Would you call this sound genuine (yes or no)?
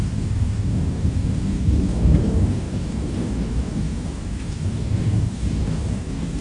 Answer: no